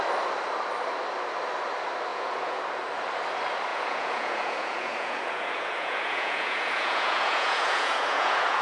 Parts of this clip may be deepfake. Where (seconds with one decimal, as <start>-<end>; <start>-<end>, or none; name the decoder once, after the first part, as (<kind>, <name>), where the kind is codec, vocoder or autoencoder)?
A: 2.1-2.6 (vocoder, Vocos); 3.7-8.6

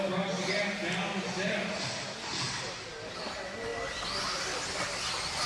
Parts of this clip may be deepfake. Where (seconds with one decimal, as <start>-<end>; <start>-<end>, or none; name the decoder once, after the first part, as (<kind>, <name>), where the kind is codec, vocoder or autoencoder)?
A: none

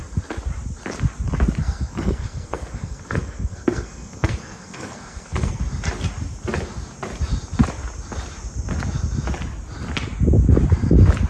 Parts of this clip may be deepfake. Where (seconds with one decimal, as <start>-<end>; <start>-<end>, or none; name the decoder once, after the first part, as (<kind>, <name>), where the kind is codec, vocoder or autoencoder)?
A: 1.6-5.6 (codec, SNAC)

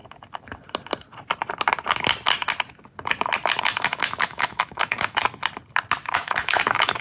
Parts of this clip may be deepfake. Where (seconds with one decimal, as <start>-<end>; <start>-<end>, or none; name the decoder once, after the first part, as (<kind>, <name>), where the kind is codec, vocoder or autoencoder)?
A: 3.6-5.2 (autoencoder, DAC-VAE); 6.1-7.0

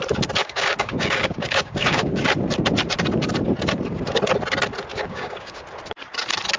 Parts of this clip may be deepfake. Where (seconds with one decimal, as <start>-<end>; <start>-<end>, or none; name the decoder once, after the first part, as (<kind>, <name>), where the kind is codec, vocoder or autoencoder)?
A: 0.4-2.2 (codec, DAC); 4.9-5.6